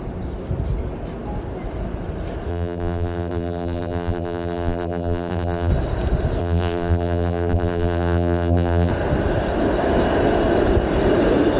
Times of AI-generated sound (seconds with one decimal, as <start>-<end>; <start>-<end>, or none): 2.5-5.7; 6.4-8.9